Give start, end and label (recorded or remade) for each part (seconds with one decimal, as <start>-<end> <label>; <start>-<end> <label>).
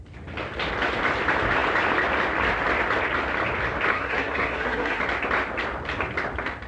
0.0-3.9 recorded; 3.9-5.0 remade; 5.0-6.7 recorded